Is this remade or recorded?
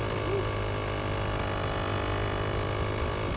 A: recorded